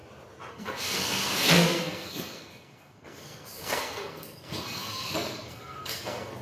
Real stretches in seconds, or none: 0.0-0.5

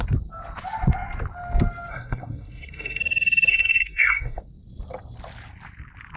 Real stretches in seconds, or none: 0.0-1.9; 3.0-3.5; 4.4-6.2

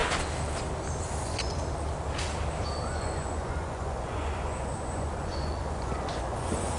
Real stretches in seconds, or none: 0.0-1.2; 1.6-2.9

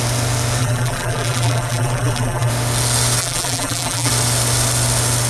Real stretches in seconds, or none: 0.0-0.6; 2.5-3.2; 4.1-5.3

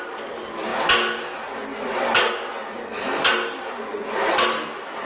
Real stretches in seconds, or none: 0.0-5.0

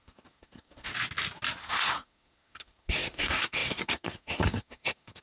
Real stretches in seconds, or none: 0.9-1.6

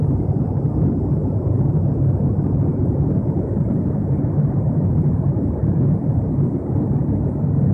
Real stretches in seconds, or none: 0.0-1.2; 1.9-2.7; 6.3-7.7

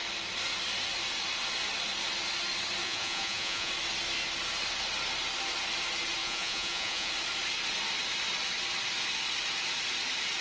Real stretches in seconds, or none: 0.0-2.8; 3.7-6.2; 7.1-10.4